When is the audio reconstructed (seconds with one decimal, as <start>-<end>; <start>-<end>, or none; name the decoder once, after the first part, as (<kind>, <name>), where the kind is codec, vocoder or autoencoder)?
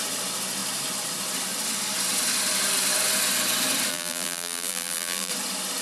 3.9-5.3 (vocoder, BigVGAN v2)